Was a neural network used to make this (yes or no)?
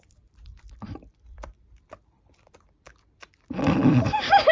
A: yes